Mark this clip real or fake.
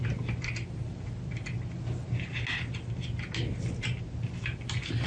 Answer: real